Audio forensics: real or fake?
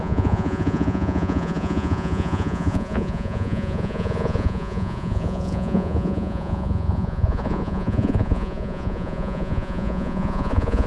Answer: fake